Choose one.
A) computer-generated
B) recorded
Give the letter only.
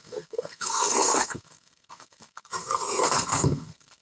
A